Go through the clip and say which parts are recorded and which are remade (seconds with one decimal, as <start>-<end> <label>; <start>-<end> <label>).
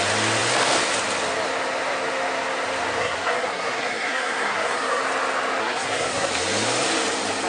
0.0-3.0 recorded; 3.0-5.0 remade; 5.0-5.6 recorded; 5.6-6.3 remade; 6.3-7.5 recorded